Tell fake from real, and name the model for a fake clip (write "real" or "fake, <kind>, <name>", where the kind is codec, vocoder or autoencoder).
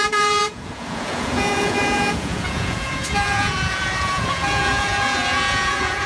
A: fake, vocoder, Vocos